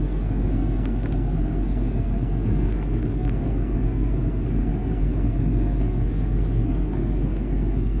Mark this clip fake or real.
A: fake